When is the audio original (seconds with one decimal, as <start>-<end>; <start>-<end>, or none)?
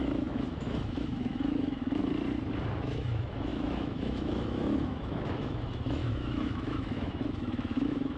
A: 2.0-2.8